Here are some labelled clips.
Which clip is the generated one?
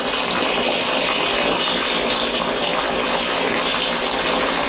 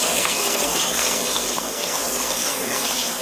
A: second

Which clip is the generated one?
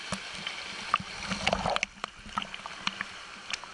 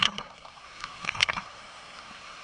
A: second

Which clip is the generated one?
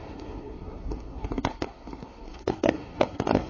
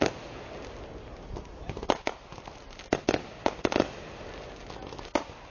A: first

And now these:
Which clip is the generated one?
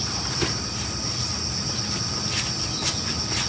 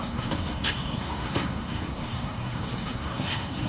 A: second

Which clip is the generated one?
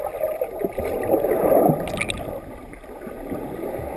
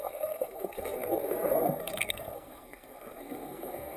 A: second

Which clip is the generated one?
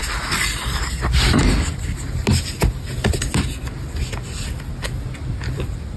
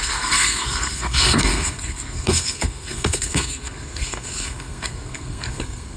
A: second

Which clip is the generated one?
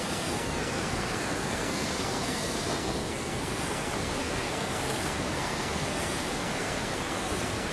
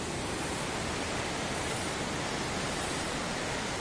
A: first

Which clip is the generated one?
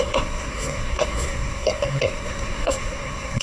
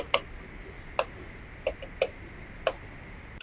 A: first